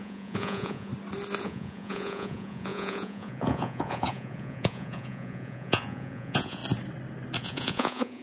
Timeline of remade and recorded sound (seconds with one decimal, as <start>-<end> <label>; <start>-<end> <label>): 0.0-0.9 remade; 0.9-1.4 recorded; 1.4-6.6 remade; 6.6-7.4 recorded; 7.4-8.2 remade